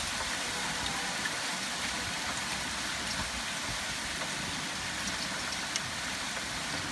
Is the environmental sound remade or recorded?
recorded